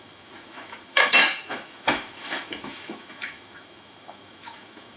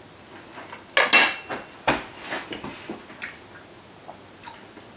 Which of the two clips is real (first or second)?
second